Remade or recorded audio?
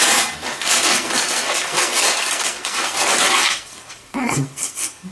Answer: remade